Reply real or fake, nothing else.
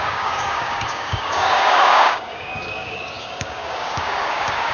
fake